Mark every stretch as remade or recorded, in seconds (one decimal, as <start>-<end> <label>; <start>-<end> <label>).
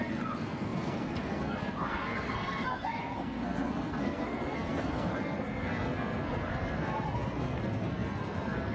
0.0-8.7 remade